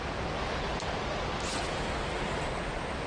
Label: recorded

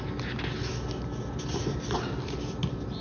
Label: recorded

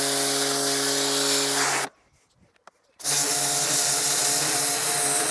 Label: recorded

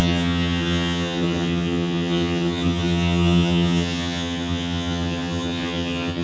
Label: remade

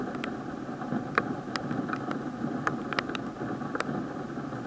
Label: recorded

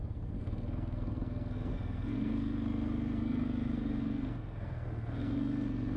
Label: remade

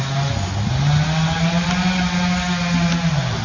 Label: recorded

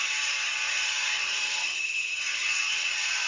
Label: remade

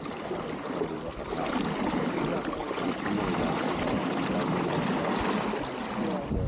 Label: recorded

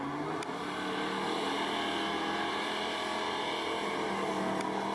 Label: recorded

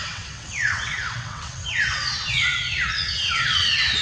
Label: remade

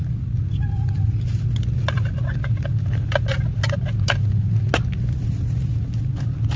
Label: recorded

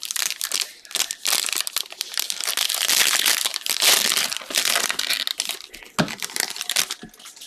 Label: recorded